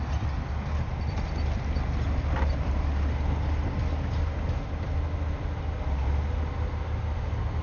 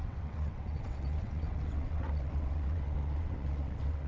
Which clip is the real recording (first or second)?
first